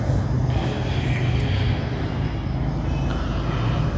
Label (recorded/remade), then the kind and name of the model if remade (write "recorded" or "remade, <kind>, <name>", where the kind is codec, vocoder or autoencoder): recorded